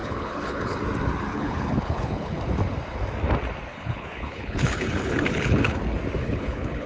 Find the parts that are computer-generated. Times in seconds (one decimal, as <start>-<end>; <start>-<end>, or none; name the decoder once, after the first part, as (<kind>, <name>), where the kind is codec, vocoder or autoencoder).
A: 0.0-0.8 (codec, HILCodec); 1.3-2.4; 3.7-5.8; 6.2-6.9